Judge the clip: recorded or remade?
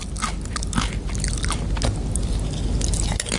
recorded